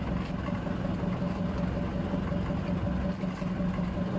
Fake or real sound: real